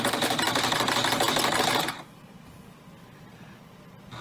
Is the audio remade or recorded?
recorded